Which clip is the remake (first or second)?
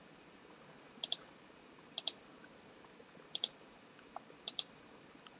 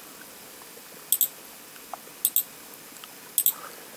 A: first